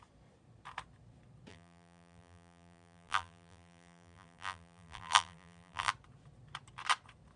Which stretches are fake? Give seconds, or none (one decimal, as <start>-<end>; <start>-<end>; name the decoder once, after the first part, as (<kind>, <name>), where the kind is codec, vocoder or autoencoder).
1.5-5.9 (vocoder, BigVGAN v2)